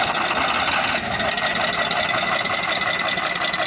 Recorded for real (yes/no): yes